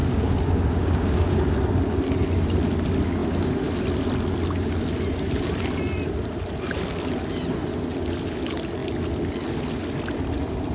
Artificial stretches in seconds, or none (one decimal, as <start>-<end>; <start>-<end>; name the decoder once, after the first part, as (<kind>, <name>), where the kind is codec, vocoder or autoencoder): 0.0-1.4 (codec, DAC)